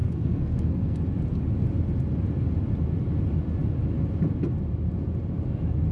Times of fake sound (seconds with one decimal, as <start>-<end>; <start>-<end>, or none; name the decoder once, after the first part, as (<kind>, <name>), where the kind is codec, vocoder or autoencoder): 0.0-1.0 (codec, SNAC)